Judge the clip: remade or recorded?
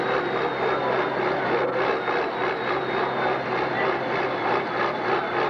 recorded